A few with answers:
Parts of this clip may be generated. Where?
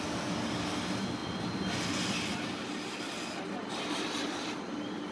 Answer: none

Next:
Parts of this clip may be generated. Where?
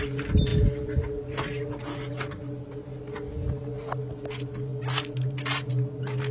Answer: none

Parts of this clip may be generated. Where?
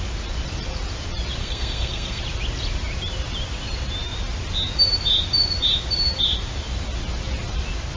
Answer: 1.4-2.2 (codec, SNAC)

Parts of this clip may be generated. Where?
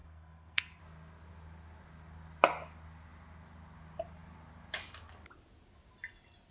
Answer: 0.0-0.8 (codec, SNAC)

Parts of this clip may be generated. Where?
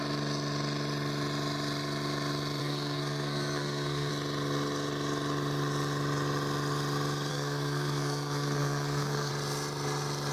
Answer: 2.6-4.1 (codec, SNAC); 7.3-9.3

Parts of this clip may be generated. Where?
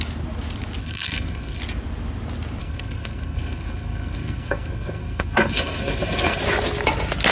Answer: 0.8-1.6 (codec, SNAC); 2.6-6.4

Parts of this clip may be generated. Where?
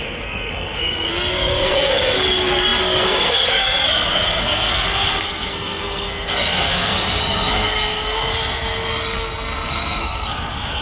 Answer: 0.0-10.8 (codec, SNAC)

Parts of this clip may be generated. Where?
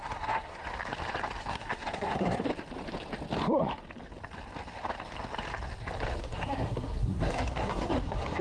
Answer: 0.0-0.6 (codec, SNAC); 1.4-2.5; 6.2-8.4